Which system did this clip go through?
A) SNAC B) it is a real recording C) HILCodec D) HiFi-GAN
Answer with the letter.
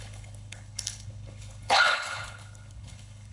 C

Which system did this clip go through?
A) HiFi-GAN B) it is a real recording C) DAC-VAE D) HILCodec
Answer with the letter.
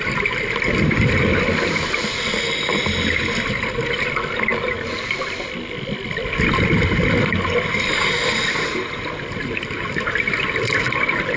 B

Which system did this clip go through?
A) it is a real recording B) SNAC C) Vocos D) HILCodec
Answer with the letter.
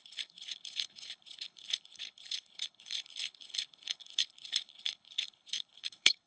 D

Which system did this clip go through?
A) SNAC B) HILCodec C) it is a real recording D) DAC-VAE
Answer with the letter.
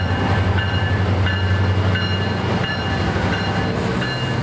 C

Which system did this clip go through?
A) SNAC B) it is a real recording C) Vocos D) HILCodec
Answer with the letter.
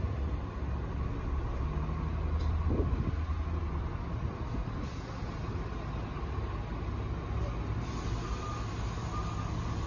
B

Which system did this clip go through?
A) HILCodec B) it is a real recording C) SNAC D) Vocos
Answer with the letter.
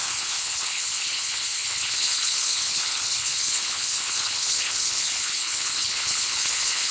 A